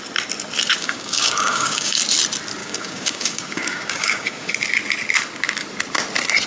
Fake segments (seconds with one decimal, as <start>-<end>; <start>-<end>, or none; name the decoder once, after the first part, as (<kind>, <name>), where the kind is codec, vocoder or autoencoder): 0.8-2.0 (codec, DAC); 2.6-4.5